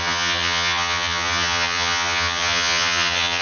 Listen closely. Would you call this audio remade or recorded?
remade